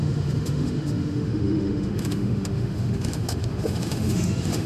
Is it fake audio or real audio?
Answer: fake